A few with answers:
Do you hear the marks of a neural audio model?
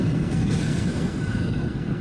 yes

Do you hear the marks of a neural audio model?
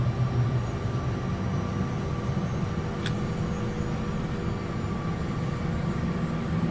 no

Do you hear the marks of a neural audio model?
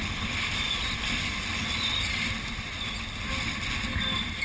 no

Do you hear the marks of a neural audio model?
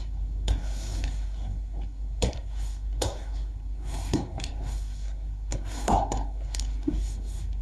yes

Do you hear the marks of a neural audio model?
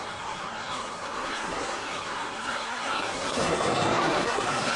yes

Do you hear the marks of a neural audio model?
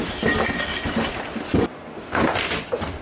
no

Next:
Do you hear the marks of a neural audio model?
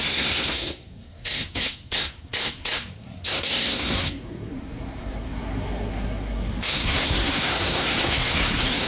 yes